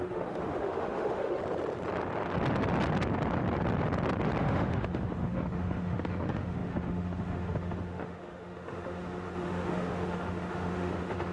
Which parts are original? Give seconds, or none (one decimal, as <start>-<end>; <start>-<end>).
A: 1.4-4.4